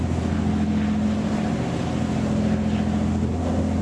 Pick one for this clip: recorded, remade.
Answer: recorded